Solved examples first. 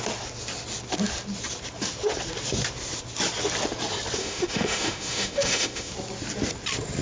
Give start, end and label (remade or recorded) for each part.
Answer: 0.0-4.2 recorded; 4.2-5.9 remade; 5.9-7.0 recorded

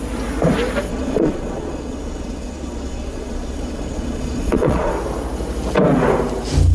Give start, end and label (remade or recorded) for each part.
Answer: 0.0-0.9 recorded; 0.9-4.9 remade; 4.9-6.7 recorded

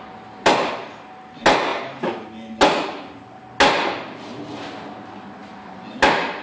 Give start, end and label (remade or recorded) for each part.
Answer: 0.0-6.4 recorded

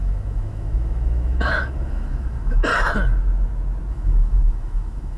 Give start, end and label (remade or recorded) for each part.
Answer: 0.0-2.7 remade; 2.7-3.9 recorded; 3.9-5.2 remade

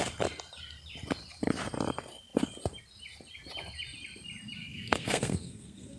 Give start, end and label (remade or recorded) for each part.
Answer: 0.0-4.6 recorded; 4.6-6.0 remade

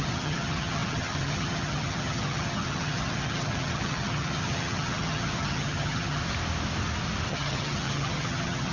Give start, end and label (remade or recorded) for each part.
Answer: 0.0-6.2 remade; 6.2-7.3 recorded; 7.3-8.7 remade

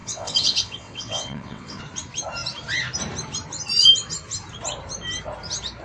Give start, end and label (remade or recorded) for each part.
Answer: 0.0-1.8 remade; 1.8-5.8 recorded